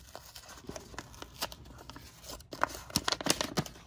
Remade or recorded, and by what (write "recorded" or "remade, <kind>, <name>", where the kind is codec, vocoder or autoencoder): recorded